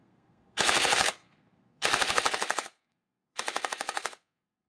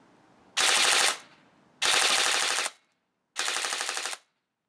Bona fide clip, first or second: second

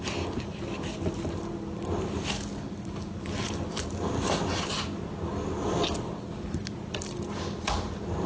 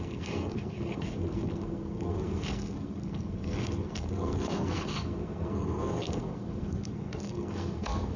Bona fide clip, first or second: first